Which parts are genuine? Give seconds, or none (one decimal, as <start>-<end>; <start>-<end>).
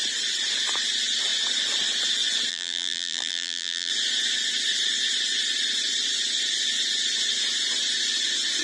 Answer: 0.0-2.5; 3.9-8.6